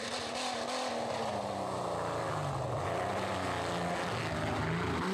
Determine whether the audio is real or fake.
real